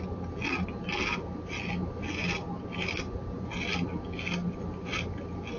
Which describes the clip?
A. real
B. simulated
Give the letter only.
A